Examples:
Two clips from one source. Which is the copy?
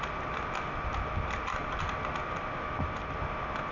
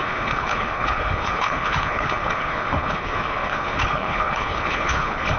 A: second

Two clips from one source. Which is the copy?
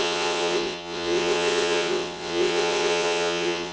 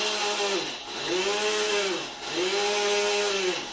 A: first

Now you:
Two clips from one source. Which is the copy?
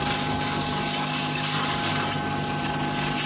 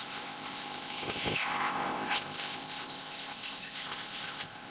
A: second